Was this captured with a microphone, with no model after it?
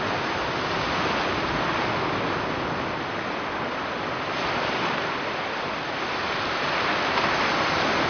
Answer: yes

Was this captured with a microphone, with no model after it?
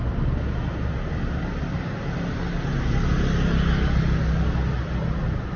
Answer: yes